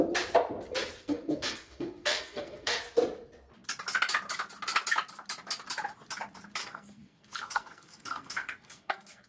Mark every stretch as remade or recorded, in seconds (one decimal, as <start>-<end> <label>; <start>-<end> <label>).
0.0-1.0 recorded; 1.0-2.8 remade; 2.8-6.6 recorded; 6.6-9.3 remade

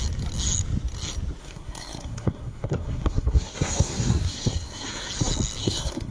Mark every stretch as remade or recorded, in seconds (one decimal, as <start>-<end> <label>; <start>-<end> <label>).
0.0-1.4 recorded; 1.4-5.1 remade; 5.1-5.6 recorded; 5.6-6.1 remade

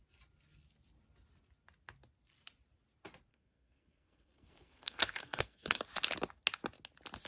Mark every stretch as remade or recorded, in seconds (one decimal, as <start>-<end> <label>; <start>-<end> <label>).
0.0-3.3 recorded; 3.3-5.8 remade; 5.8-7.3 recorded

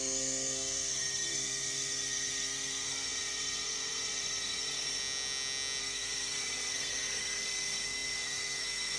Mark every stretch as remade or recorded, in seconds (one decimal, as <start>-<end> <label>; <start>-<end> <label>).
0.0-5.0 remade; 5.0-5.8 recorded; 5.8-9.0 remade

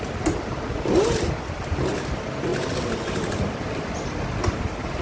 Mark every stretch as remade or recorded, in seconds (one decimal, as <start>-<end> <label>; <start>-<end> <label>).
0.0-5.0 recorded

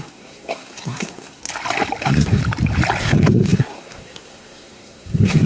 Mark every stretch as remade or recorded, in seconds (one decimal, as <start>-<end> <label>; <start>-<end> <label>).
0.0-1.4 remade; 1.4-2.0 recorded; 2.0-2.4 remade; 2.4-3.0 recorded; 3.0-5.5 remade

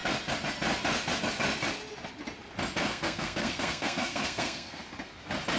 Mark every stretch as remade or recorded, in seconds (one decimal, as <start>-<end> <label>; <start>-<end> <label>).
0.0-2.9 recorded; 2.9-4.8 remade; 4.8-5.6 recorded

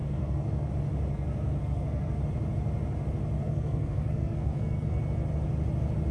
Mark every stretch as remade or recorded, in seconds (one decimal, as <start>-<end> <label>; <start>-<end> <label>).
0.0-0.7 remade; 0.7-1.1 recorded; 1.1-2.2 remade; 2.2-3.4 recorded; 3.4-5.0 remade; 5.0-6.1 recorded